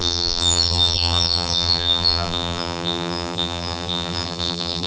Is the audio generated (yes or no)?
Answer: yes